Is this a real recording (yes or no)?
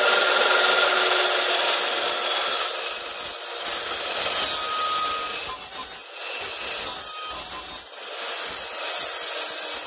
yes